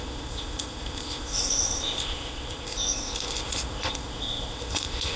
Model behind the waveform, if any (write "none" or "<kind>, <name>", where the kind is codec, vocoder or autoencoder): codec, ZipCodec